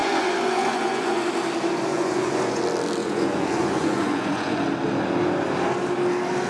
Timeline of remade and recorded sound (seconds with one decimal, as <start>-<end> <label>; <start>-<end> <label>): 0.0-1.3 remade; 1.3-1.9 recorded; 1.9-2.6 remade; 2.6-3.0 recorded; 3.0-4.6 remade; 4.6-6.5 recorded